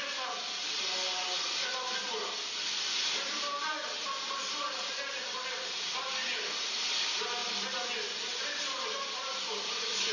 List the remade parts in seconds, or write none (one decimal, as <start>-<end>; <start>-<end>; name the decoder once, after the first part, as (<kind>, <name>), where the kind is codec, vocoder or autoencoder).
none

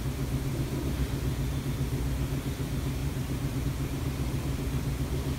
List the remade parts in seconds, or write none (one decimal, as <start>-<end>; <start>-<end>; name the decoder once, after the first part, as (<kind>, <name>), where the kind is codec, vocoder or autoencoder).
3.0-3.6 (vocoder, BigVGAN v2)